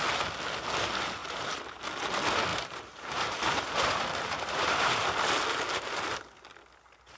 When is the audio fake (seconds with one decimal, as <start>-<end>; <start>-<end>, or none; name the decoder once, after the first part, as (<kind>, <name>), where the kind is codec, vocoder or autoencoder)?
1.2-1.8 (vocoder, BigVGAN v2); 2.5-5.0